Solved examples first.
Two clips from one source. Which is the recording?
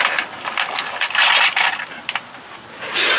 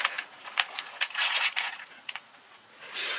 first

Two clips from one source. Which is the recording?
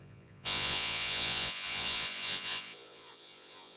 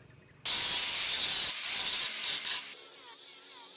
second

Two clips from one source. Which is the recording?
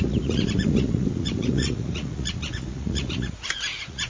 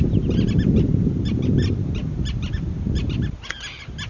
second